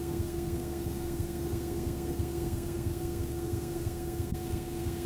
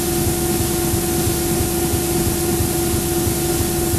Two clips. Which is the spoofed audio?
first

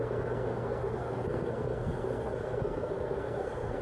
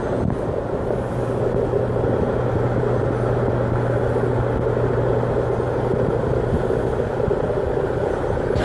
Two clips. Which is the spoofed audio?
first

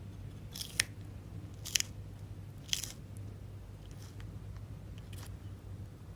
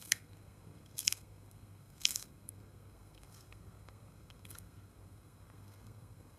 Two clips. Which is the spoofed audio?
second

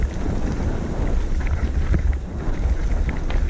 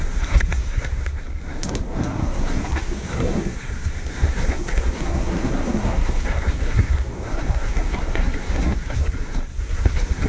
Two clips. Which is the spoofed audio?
second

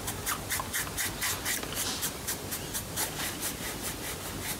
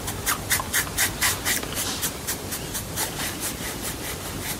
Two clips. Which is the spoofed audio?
second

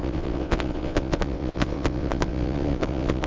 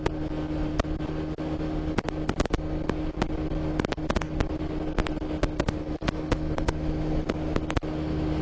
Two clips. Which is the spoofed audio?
first